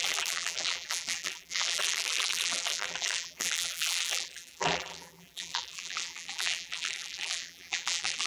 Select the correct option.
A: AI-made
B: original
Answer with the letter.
A